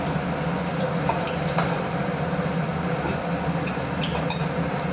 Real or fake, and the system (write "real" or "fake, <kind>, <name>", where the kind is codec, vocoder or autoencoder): real